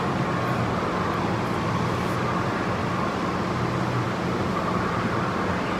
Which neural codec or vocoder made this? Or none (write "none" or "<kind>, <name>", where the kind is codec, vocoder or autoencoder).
none